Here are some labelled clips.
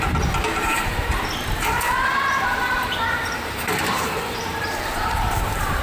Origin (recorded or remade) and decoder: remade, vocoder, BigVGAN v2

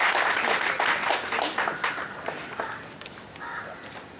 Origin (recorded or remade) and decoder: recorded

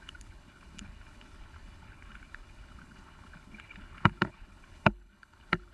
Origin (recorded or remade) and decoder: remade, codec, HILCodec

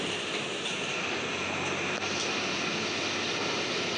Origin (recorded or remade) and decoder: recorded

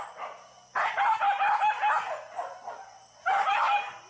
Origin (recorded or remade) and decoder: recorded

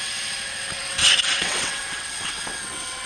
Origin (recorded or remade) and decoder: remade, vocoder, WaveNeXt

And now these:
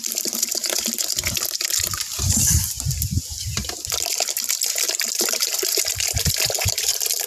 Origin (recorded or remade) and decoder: remade, vocoder, BigVGAN v2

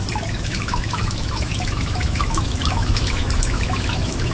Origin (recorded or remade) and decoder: remade, autoencoder, DAC-VAE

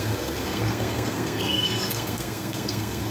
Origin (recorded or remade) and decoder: remade, codec, SNAC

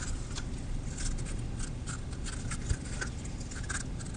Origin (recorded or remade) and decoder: recorded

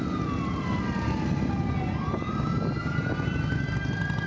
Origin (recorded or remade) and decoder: recorded